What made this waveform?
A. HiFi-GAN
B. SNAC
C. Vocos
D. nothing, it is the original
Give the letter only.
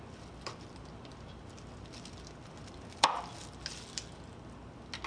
D